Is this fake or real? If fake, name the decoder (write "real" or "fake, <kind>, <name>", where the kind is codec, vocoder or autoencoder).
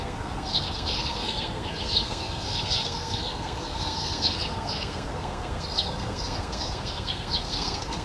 fake, codec, SNAC